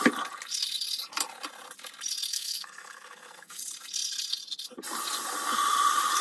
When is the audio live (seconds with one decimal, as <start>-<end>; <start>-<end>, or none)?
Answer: 0.0-2.3; 3.6-6.2